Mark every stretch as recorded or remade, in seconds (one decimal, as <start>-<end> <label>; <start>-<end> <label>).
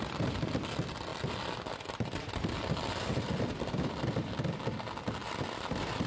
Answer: 0.0-1.1 recorded; 1.1-4.3 remade; 4.3-5.2 recorded; 5.2-6.1 remade